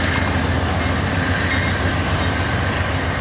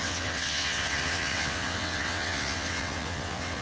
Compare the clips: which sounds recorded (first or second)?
first